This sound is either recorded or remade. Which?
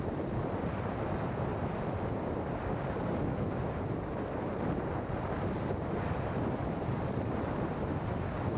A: remade